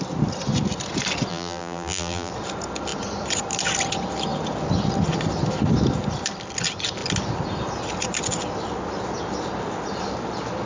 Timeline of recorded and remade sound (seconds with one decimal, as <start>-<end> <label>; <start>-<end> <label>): 0.0-1.3 recorded; 1.3-2.3 remade; 2.3-10.7 recorded